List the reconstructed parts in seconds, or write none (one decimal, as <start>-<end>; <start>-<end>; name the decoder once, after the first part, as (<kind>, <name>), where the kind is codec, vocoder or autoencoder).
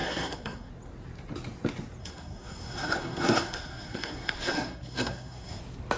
0.0-0.7 (codec, SNAC); 2.0-5.6